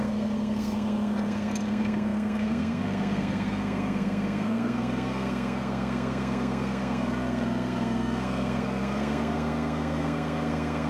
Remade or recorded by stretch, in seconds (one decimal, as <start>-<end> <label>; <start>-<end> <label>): 0.0-10.9 remade